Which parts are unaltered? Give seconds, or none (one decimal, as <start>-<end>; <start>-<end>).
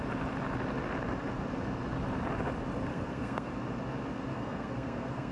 0.0-2.9; 3.5-4.3